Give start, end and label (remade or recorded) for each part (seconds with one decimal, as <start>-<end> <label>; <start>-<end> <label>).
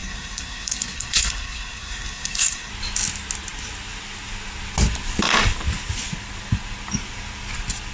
0.0-2.7 remade; 2.7-7.9 recorded